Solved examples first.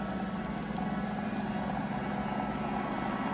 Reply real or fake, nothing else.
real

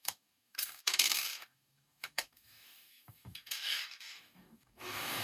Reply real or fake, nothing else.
fake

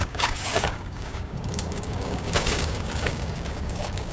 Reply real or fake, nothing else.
fake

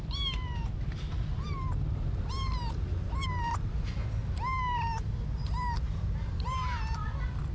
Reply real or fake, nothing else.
real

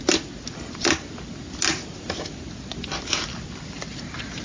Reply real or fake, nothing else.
real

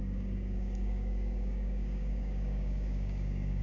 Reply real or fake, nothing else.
fake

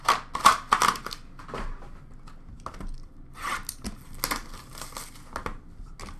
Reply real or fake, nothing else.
real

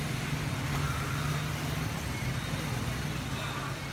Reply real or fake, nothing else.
real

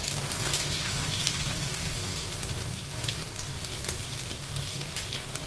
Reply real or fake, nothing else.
fake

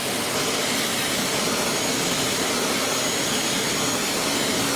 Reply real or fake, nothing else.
real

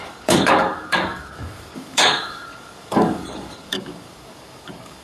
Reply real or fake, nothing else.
fake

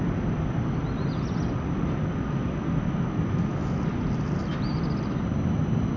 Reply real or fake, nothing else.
real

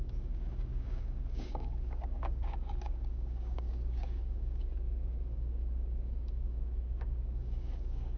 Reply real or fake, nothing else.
fake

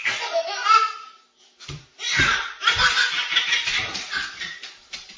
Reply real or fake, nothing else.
real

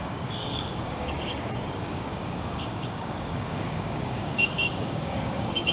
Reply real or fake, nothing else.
fake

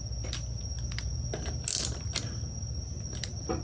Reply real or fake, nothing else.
real